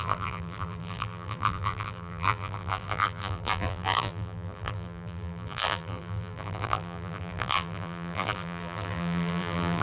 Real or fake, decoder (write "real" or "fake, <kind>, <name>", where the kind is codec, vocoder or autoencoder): fake, vocoder, BigVGAN v2